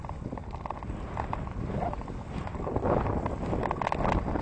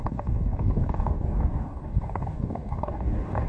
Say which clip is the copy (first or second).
second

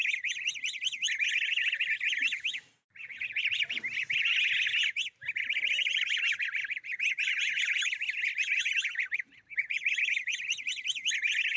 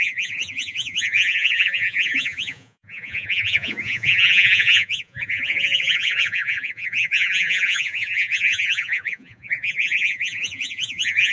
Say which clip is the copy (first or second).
second